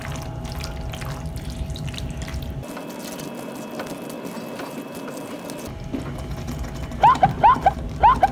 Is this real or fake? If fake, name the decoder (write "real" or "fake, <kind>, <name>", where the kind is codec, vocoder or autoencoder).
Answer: real